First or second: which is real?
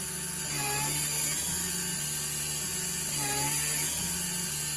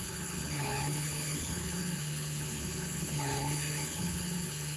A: first